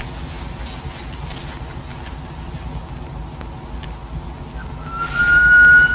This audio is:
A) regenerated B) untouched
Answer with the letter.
B